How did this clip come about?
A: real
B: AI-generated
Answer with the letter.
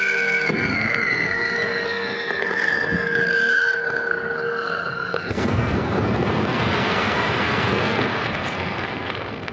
B